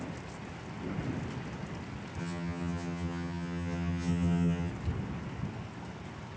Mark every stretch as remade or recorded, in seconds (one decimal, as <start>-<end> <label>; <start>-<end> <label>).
0.0-2.2 recorded; 2.2-4.7 remade; 4.7-6.4 recorded